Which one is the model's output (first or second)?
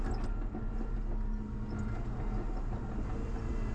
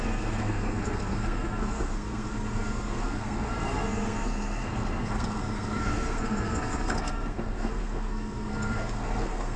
second